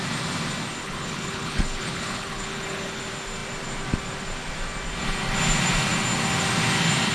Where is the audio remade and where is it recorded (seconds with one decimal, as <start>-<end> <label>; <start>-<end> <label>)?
0.0-0.8 recorded; 0.8-3.0 remade; 3.0-7.1 recorded

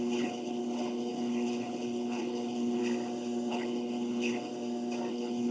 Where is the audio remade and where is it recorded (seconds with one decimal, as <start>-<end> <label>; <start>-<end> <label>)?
0.0-2.8 remade; 2.8-3.5 recorded; 3.5-4.5 remade; 4.5-5.1 recorded; 5.1-5.5 remade

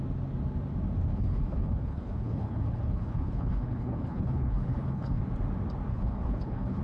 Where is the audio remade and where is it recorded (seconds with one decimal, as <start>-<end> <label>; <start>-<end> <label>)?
0.0-1.1 recorded; 1.1-5.2 remade; 5.2-5.9 recorded; 5.9-6.8 remade

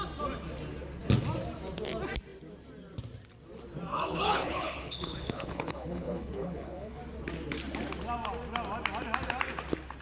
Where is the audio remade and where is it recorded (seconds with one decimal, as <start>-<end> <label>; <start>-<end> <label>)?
0.0-3.9 recorded; 3.9-7.0 remade; 7.0-10.0 recorded